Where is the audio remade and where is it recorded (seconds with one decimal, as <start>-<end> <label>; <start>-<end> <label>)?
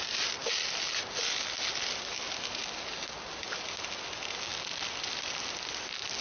0.0-6.2 recorded